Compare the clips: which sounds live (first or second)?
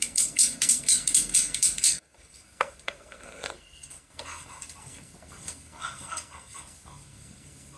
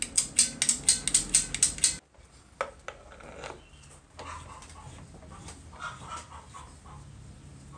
second